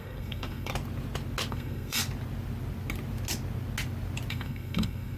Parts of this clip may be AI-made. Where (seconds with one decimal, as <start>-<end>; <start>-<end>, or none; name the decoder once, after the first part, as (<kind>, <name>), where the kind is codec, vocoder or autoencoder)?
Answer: 0.0-0.7 (codec, SNAC); 1.5-2.0; 4.3-5.2